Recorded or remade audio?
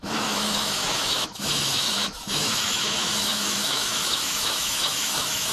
remade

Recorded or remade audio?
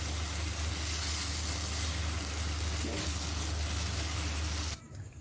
recorded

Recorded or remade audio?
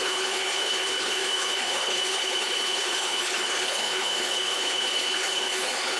remade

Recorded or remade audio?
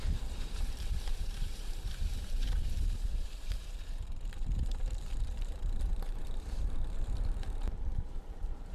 remade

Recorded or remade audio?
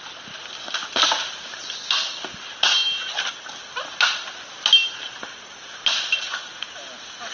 recorded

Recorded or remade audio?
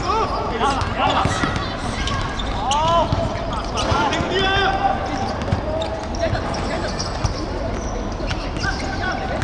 recorded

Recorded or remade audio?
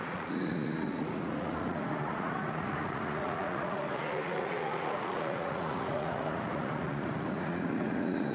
remade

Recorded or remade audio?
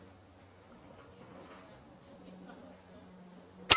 recorded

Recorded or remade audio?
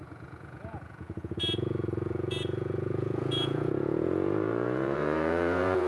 remade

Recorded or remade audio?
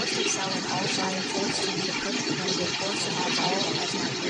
remade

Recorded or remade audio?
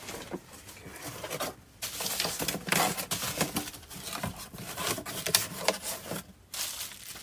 recorded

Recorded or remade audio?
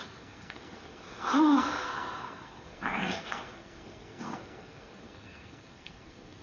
remade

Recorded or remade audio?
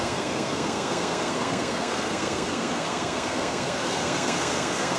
remade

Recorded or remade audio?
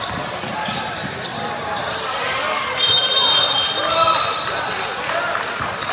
recorded